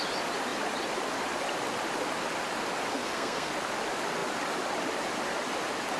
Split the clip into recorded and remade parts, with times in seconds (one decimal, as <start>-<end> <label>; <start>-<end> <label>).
0.0-2.9 recorded; 2.9-3.5 remade; 3.5-6.0 recorded